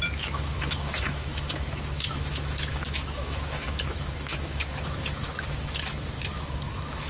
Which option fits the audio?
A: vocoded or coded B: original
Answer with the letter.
A